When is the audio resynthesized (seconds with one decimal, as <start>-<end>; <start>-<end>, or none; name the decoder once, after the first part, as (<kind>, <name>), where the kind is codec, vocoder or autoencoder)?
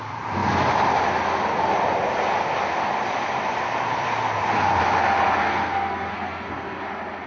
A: 5.4-6.8 (codec, SNAC)